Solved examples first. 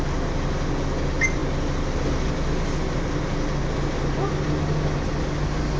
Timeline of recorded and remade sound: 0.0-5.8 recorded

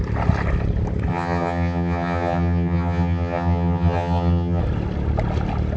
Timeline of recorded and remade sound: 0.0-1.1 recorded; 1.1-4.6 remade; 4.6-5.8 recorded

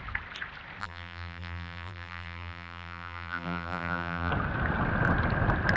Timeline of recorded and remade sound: 0.0-0.8 recorded; 0.8-4.3 remade; 4.3-5.8 recorded

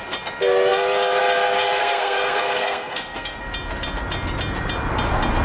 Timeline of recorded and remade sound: 0.0-1.8 recorded; 1.8-3.4 remade; 3.4-5.4 recorded

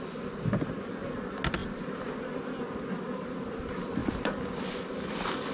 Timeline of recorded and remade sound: 0.0-4.0 recorded; 4.0-4.6 remade; 4.6-5.5 recorded